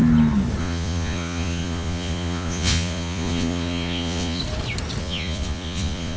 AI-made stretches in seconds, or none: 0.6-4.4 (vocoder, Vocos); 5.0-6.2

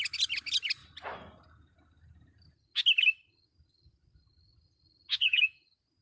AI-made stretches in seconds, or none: 5.1-5.6 (vocoder, Vocos)

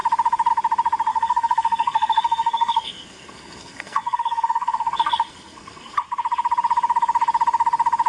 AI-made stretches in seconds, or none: 1.1-5.9 (codec, SNAC)